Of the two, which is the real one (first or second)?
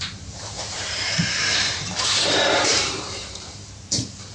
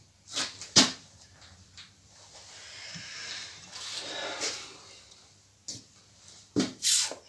second